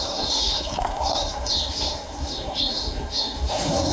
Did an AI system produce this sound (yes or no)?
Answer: yes